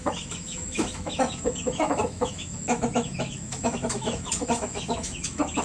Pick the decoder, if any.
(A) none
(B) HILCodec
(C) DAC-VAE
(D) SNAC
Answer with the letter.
C